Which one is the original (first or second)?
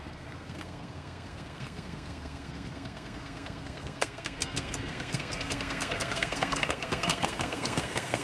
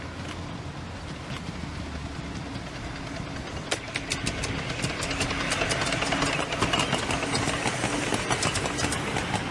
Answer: second